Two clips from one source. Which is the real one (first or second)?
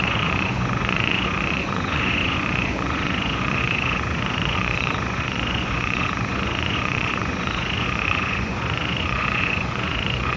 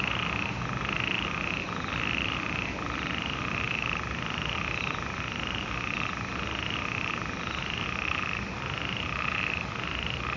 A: second